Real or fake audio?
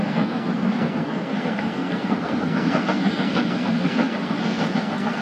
fake